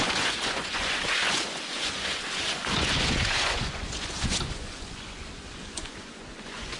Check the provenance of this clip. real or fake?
fake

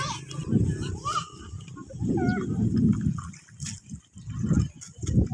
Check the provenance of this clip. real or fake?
real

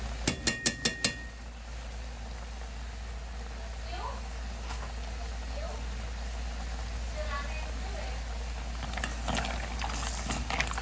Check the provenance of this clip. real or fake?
real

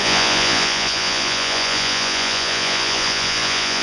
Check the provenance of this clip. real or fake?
fake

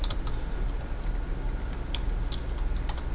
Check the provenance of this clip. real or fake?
real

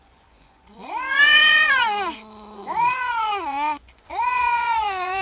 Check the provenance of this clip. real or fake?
fake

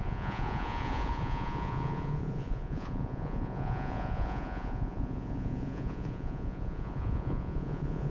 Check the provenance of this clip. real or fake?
fake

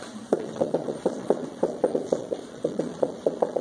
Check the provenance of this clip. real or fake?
fake